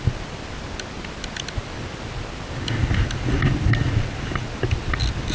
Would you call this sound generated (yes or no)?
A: no